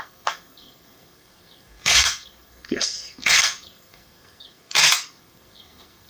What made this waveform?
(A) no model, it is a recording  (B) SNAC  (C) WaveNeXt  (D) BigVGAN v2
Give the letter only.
B